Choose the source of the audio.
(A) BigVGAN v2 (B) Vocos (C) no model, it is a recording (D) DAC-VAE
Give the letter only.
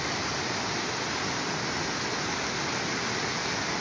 C